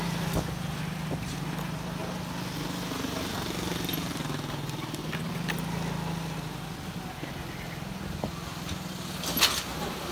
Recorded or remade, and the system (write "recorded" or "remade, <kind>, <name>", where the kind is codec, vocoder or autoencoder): recorded